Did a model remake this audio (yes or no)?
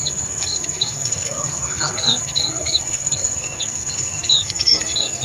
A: yes